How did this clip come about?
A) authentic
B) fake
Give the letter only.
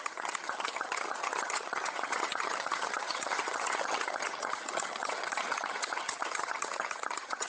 B